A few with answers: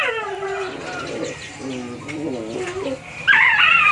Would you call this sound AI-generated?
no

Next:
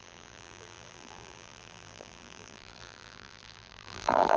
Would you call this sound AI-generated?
yes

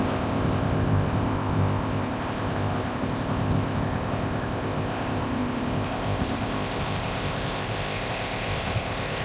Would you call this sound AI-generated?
yes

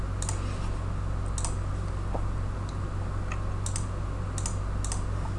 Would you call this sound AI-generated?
no